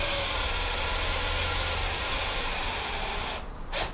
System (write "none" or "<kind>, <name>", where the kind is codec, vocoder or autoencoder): none